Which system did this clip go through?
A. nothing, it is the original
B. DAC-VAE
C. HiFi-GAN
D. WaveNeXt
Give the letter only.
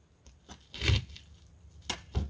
A